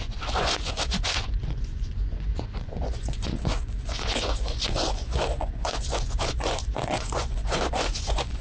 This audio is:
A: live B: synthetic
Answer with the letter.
B